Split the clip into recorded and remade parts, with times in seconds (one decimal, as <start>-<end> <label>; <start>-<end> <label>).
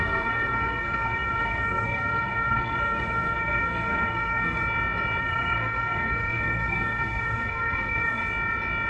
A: 0.0-4.6 remade; 4.6-5.2 recorded; 5.2-8.2 remade; 8.2-8.9 recorded